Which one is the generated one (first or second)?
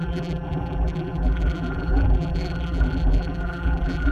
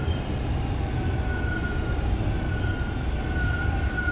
first